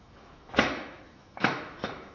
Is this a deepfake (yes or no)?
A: yes